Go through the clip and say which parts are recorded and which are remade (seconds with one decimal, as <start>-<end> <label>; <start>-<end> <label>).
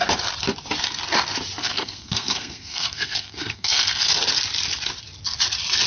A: 0.0-1.6 recorded; 1.6-4.1 remade; 4.1-5.9 recorded